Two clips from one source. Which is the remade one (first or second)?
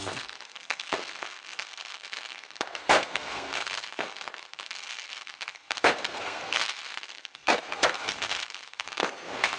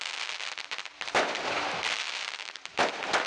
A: first